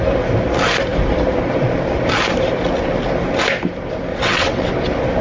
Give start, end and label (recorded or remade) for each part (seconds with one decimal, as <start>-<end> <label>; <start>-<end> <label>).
0.0-4.1 recorded; 4.1-4.7 remade; 4.7-5.2 recorded